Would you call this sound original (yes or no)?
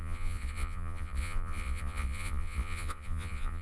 no